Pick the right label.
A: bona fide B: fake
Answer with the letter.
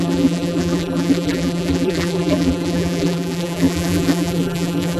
B